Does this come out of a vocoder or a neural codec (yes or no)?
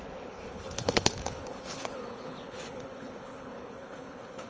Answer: yes